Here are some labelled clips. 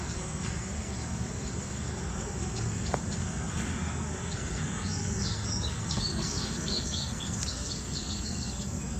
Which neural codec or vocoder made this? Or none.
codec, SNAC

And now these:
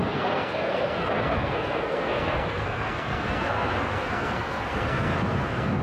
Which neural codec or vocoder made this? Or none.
codec, SNAC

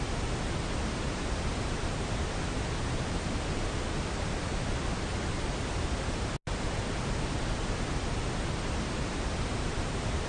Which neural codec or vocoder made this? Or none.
none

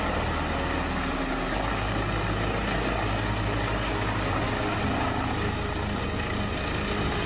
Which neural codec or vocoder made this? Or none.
none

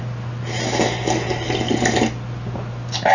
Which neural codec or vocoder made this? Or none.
none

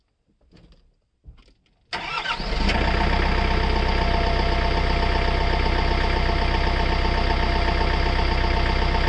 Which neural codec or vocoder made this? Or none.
none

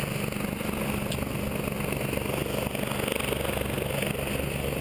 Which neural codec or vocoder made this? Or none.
none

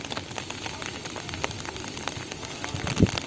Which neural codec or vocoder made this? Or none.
none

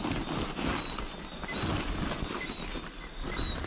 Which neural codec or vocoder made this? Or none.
none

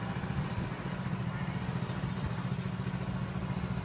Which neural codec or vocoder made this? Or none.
none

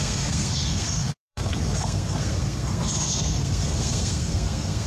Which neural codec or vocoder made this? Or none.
codec, SNAC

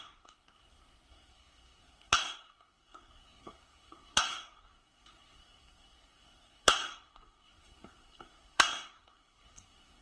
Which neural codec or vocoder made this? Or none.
codec, SNAC